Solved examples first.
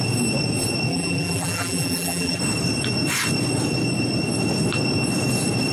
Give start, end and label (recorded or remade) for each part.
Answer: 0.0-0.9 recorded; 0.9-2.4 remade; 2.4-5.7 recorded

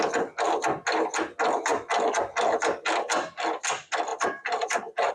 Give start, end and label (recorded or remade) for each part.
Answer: 0.0-4.1 recorded; 4.1-5.1 remade

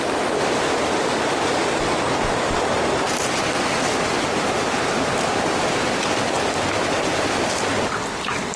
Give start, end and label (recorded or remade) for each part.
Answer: 0.0-5.3 recorded; 5.3-8.6 remade

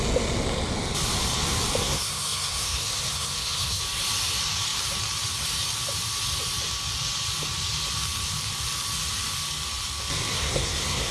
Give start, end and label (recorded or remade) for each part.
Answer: 0.0-1.8 recorded; 1.8-3.8 remade; 3.8-10.3 recorded; 10.3-11.1 remade

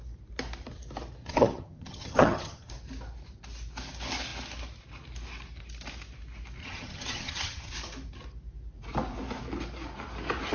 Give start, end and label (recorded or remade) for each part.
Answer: 0.0-1.2 recorded; 1.2-2.7 remade; 2.7-6.6 recorded; 6.6-7.7 remade; 7.7-10.5 recorded